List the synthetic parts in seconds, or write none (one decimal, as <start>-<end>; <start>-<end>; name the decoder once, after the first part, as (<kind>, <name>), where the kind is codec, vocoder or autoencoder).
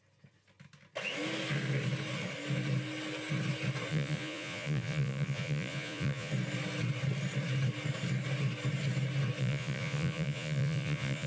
3.9-6.3 (vocoder, Vocos); 9.4-11.3